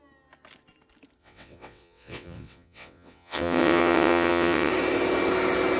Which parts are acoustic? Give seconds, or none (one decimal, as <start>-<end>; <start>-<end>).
0.0-1.2; 4.7-5.8